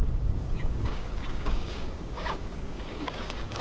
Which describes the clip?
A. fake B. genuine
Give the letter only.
A